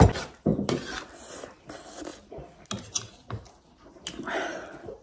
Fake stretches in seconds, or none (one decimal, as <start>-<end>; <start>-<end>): none